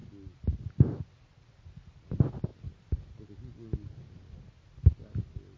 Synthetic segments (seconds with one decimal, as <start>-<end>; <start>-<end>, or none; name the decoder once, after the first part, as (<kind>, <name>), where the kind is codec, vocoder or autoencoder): none